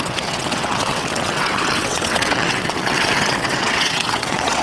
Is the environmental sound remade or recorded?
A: remade